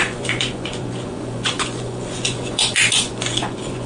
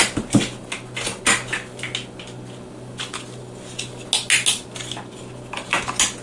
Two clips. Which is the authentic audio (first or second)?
second